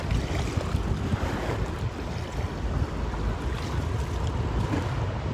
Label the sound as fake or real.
real